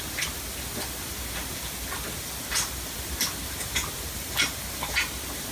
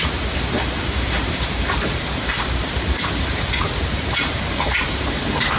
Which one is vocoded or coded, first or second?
second